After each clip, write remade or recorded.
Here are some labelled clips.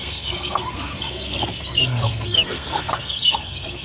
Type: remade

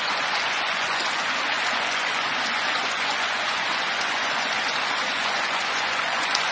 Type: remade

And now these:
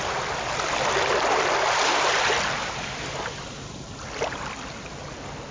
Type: recorded